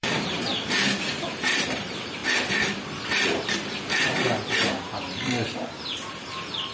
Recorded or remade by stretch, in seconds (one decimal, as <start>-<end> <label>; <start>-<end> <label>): 0.0-2.2 remade; 2.2-6.1 recorded; 6.1-6.7 remade